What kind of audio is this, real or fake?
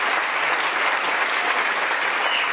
real